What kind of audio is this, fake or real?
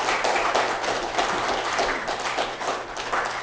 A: real